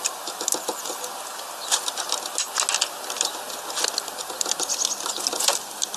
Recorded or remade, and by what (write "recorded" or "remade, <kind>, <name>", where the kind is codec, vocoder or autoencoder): recorded